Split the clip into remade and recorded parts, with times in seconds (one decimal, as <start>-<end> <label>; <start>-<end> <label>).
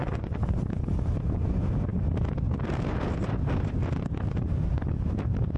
0.0-0.6 remade; 0.6-5.6 recorded